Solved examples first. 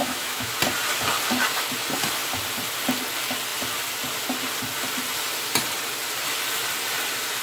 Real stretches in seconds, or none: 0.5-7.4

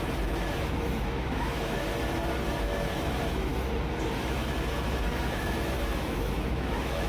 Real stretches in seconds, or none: 1.9-2.6; 3.5-4.2

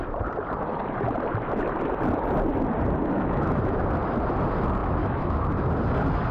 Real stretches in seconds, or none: 0.0-3.0; 3.8-4.8; 5.4-6.3

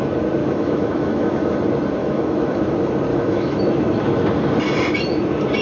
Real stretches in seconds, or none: 0.0-0.4; 1.5-2.0; 2.6-3.1; 3.6-5.6

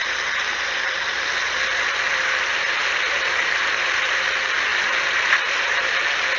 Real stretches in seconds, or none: 0.0-6.4